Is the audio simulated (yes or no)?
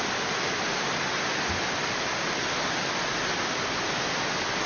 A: no